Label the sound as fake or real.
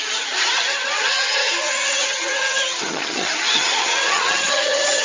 fake